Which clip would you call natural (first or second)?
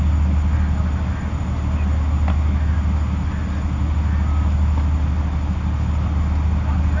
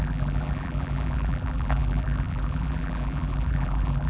first